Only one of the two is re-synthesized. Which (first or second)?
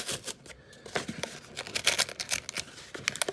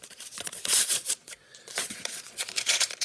second